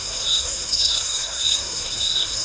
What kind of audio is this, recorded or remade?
remade